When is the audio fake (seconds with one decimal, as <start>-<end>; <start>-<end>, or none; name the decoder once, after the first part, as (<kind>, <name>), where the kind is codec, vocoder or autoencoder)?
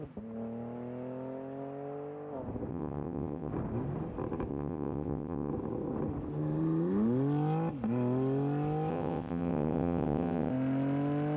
2.7-3.5 (vocoder, WaveNeXt); 4.5-5.5; 8.9-10.5